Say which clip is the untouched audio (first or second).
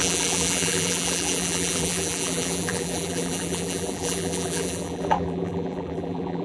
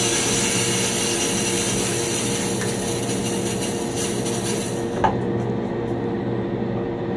second